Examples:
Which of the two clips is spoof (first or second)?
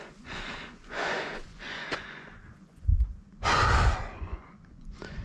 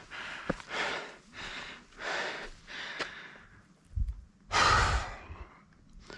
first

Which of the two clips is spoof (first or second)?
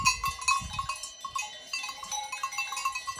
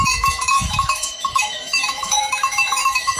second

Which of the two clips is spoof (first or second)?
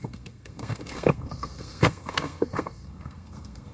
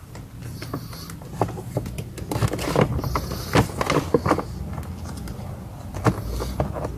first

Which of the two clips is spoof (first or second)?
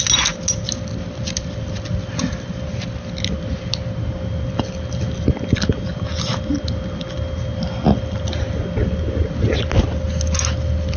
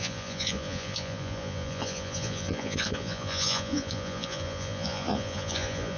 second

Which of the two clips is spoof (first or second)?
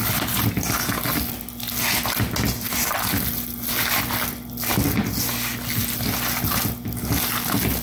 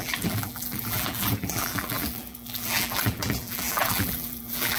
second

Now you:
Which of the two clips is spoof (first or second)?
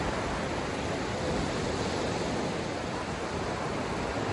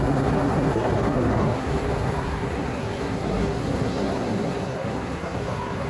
second